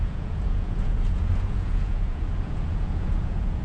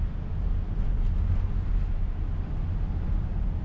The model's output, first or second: first